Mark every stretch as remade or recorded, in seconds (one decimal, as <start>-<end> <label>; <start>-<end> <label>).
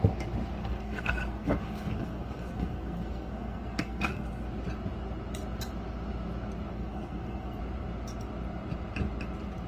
0.0-0.6 recorded; 0.6-4.5 remade; 4.5-6.7 recorded; 6.7-7.6 remade; 7.6-9.7 recorded